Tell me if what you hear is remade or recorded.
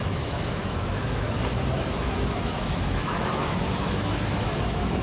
remade